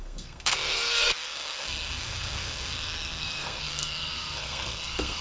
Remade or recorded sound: remade